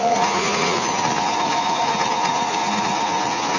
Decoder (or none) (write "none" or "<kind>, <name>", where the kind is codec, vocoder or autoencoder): vocoder, Vocos